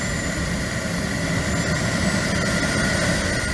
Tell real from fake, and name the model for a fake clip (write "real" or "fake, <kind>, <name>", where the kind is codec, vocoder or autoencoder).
real